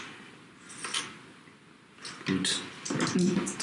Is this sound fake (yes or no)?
no